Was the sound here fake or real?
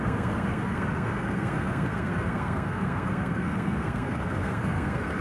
fake